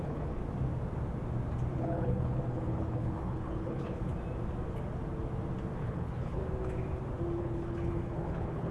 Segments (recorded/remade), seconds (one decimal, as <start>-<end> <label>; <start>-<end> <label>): 0.0-0.4 remade; 0.4-1.7 recorded; 1.7-4.1 remade; 4.1-5.8 recorded; 5.8-6.4 remade; 6.4-7.4 recorded; 7.4-8.7 remade